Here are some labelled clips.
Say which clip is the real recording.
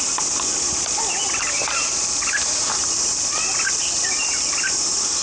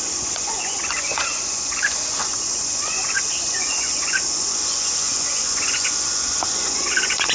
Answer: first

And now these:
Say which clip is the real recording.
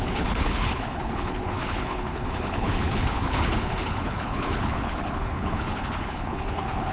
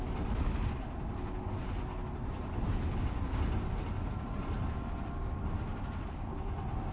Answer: second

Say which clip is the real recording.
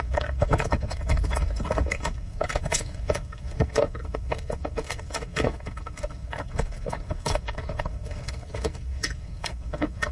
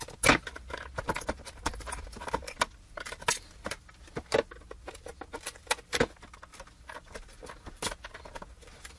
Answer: second